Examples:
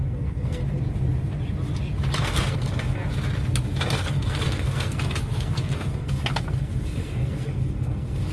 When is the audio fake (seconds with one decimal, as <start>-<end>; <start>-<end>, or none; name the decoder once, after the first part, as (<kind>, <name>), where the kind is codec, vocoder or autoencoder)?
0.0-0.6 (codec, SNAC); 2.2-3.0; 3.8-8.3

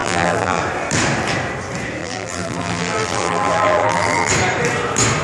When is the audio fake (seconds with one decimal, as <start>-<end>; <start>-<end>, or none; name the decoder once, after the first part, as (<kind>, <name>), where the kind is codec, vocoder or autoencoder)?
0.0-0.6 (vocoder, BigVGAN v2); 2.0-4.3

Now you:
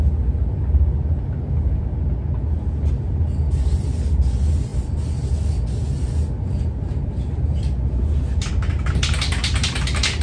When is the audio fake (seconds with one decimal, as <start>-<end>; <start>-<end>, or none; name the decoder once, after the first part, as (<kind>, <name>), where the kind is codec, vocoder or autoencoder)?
none